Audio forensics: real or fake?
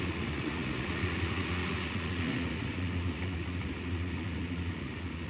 fake